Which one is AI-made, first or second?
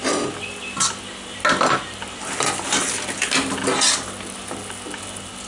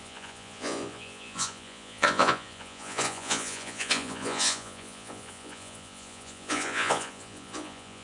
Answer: second